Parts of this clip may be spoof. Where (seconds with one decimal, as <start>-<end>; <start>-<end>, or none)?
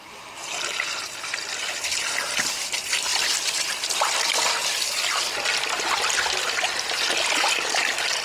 none